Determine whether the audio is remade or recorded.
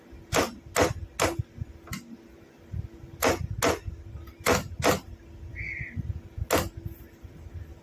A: recorded